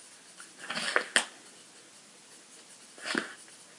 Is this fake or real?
real